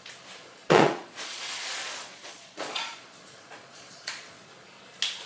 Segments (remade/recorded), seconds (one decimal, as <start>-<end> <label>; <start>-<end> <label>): 0.0-0.6 recorded; 0.6-1.4 remade; 1.4-1.8 recorded; 1.8-4.5 remade; 4.5-5.3 recorded